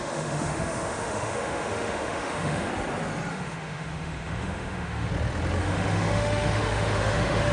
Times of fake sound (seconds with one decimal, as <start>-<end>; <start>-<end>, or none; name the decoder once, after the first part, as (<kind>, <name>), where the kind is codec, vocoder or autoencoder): 0.0-2.7 (autoencoder, DAC-VAE); 3.3-5.1; 5.6-7.5